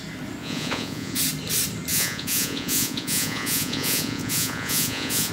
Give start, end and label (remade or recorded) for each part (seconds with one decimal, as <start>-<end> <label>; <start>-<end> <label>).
0.0-0.4 recorded; 0.4-1.2 remade; 1.2-1.9 recorded; 1.9-5.3 remade